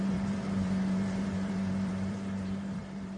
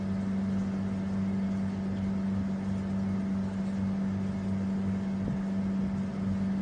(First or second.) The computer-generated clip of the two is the first